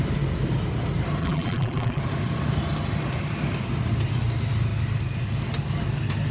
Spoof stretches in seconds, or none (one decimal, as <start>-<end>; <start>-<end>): 1.2-2.0